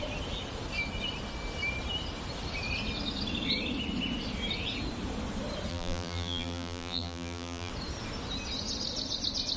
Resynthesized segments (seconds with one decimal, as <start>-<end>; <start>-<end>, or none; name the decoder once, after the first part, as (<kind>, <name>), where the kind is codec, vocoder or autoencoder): 5.7-7.7 (vocoder, BigVGAN v2)